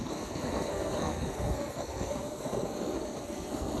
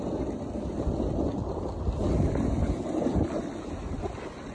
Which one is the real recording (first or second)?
second